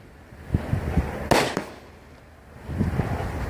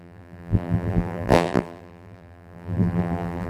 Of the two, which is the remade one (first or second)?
second